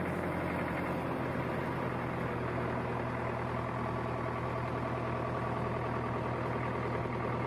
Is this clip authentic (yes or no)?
yes